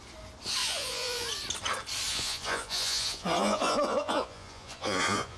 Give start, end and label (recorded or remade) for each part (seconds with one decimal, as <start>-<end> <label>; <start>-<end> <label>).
0.0-0.6 recorded; 0.6-1.3 remade; 1.3-2.1 recorded; 2.1-5.4 remade